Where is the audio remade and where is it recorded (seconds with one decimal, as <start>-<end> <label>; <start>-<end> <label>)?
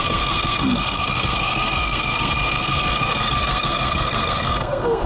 0.0-5.1 remade